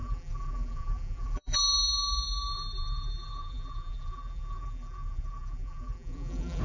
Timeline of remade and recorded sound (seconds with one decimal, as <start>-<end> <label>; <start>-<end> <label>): 0.0-1.6 remade; 1.6-2.5 recorded; 2.5-6.6 remade